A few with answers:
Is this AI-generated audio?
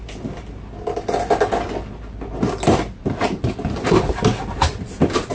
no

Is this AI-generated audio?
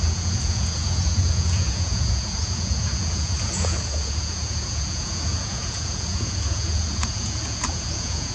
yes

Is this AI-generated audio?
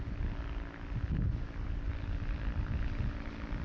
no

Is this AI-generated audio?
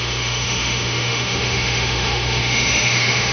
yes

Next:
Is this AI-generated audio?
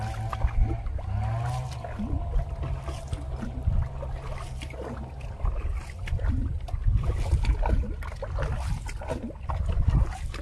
no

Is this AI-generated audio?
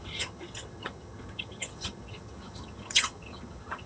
yes